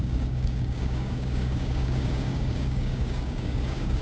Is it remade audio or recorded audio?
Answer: remade